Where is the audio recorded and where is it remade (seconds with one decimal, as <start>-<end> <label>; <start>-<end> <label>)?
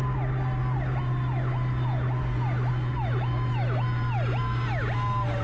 0.0-5.4 recorded